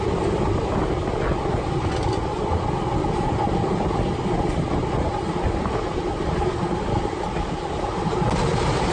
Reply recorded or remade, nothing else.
recorded